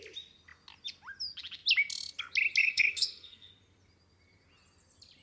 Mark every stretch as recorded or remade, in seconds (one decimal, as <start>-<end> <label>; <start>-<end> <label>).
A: 0.0-2.6 recorded; 2.6-3.5 remade; 3.5-5.2 recorded